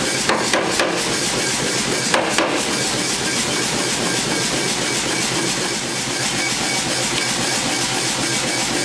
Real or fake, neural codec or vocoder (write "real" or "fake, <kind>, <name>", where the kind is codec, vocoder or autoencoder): real